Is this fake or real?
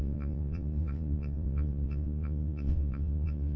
fake